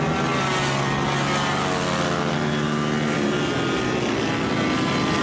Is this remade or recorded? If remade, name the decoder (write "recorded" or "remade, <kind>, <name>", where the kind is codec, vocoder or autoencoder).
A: recorded